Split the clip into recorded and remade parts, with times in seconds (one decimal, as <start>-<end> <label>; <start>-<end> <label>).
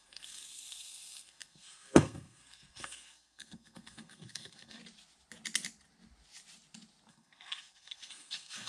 0.0-4.8 remade; 4.8-7.1 recorded; 7.1-8.7 remade